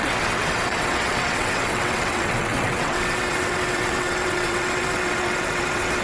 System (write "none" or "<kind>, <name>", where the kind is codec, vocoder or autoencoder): vocoder, WaveNeXt